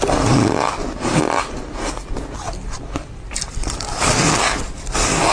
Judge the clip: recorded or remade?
recorded